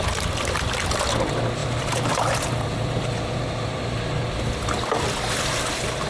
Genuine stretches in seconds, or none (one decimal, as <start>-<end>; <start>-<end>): 0.0-1.6; 4.2-6.1